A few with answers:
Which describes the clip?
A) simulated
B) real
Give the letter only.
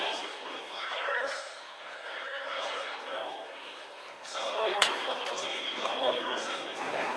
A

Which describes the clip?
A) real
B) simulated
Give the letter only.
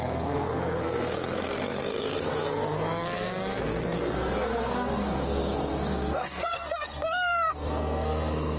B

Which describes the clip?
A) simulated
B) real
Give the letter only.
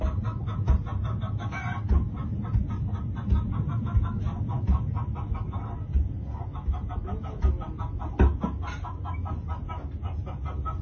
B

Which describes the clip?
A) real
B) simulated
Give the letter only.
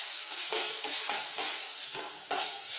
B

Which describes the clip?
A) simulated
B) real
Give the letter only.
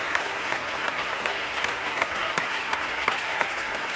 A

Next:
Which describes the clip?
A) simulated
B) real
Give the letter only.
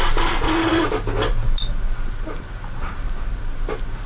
B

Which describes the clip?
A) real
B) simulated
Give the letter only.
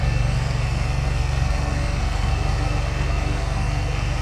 B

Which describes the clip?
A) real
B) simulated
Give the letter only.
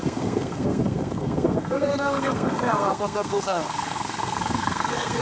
B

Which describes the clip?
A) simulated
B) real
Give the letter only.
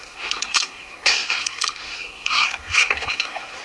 A